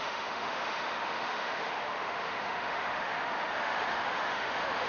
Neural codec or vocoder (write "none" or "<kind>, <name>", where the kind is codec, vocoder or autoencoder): autoencoder, DAC-VAE